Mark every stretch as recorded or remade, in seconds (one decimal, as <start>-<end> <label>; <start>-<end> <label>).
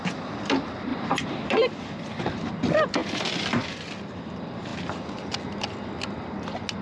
0.0-4.7 remade; 4.7-6.8 recorded